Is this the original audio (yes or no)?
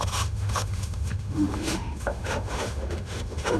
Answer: no